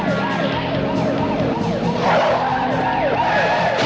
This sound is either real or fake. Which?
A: real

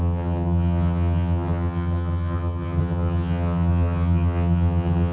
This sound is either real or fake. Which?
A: fake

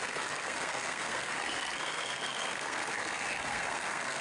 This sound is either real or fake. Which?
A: fake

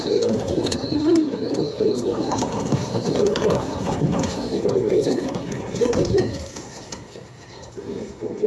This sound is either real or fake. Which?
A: fake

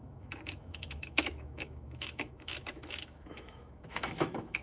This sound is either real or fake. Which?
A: fake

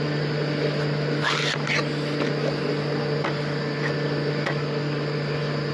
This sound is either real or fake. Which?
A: real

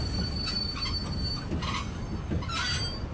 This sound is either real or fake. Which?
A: real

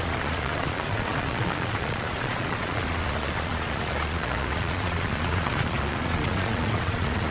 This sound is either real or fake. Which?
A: fake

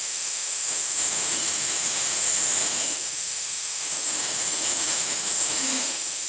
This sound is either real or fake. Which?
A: fake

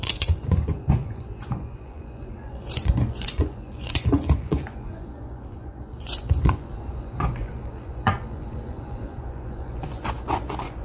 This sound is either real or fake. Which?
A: fake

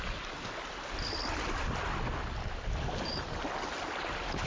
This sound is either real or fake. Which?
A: real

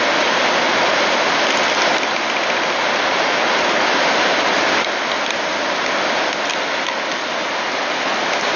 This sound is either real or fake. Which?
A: real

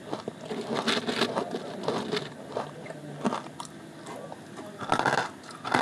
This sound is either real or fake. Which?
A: real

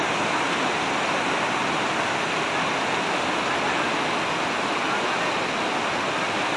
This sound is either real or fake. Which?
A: real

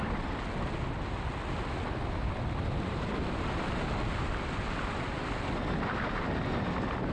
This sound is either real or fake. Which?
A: real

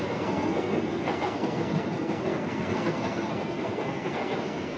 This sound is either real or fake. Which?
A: fake